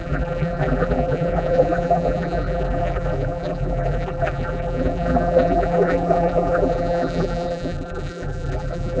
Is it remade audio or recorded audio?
remade